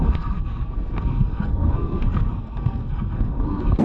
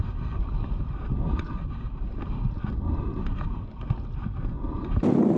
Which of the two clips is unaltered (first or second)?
second